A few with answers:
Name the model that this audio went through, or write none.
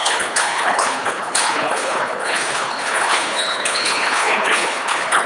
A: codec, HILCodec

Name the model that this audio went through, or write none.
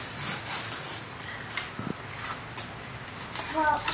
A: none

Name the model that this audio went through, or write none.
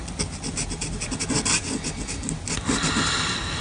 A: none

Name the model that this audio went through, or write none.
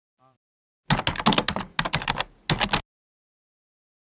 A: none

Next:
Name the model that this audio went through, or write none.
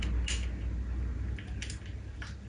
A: none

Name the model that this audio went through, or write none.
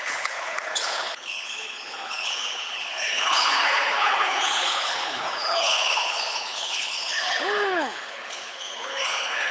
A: codec, HILCodec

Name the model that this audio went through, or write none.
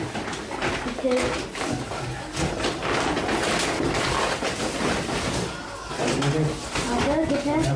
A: none